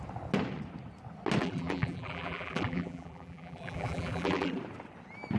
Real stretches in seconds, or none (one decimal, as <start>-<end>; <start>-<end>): 0.0-1.4; 4.6-5.4